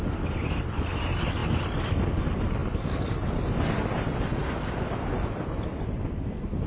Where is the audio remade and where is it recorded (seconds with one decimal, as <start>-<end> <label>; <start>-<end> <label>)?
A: 0.0-6.7 recorded